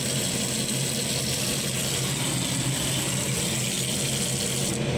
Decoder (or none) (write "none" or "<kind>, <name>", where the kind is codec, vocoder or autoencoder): none